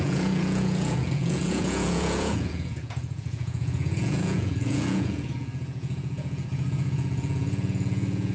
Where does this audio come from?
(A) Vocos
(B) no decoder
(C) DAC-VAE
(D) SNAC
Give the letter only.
A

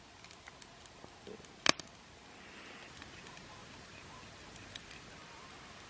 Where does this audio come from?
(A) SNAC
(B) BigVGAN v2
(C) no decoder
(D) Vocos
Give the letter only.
C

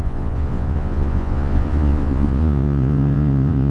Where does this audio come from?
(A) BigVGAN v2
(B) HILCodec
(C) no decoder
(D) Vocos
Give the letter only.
D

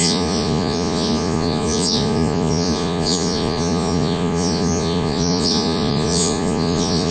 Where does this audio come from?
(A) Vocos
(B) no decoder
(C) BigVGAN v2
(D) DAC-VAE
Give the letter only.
A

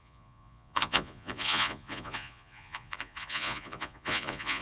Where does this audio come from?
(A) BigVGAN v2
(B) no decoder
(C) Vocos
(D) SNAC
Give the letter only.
C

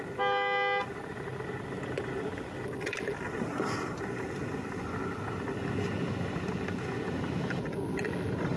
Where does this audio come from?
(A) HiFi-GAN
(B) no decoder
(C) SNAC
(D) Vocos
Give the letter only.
B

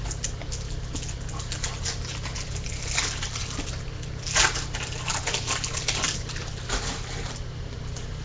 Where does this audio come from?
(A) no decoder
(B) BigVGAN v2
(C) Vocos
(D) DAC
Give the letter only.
A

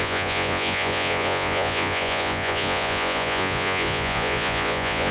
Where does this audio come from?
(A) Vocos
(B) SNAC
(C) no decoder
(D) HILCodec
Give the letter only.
A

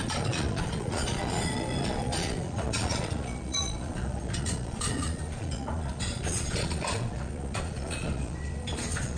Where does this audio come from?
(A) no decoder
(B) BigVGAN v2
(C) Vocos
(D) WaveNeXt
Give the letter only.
C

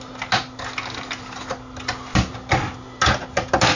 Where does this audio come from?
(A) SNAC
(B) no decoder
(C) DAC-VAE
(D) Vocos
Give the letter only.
B